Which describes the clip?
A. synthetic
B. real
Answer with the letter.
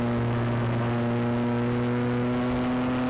B